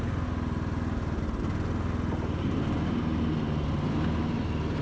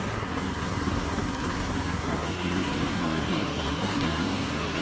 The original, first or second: first